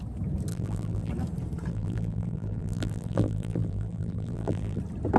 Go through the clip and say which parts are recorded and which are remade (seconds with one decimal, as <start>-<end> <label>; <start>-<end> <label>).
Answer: 0.0-0.5 recorded; 0.5-1.1 remade; 1.1-1.7 recorded; 1.7-4.8 remade; 4.8-5.2 recorded